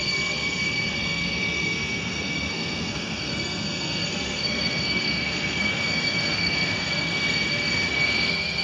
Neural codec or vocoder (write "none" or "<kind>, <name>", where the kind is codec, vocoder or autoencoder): codec, SNAC